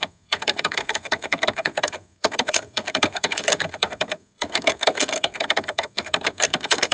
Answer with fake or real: fake